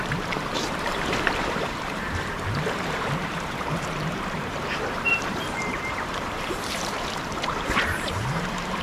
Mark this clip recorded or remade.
remade